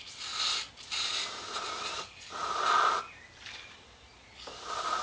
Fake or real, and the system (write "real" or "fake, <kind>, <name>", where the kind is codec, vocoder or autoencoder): real